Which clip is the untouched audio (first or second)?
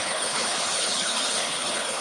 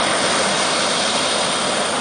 second